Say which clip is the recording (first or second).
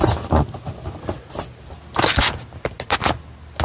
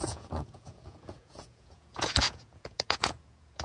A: first